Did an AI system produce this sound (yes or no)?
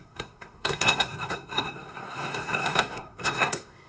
yes